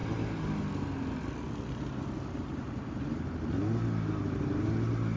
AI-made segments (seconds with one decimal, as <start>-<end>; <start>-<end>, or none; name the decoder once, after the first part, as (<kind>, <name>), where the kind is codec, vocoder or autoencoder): none